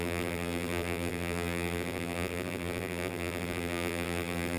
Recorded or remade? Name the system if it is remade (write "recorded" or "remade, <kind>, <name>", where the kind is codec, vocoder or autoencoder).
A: remade, vocoder, BigVGAN v2